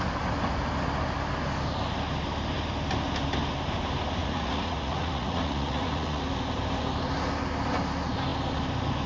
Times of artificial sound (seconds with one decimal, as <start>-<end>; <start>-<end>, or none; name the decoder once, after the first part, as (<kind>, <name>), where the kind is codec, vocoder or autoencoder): 4.2-6.2 (vocoder, Vocos)